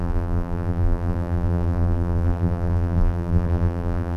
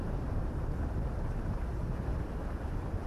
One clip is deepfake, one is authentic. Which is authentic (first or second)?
second